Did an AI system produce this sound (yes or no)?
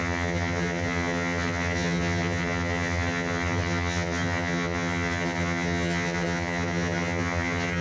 yes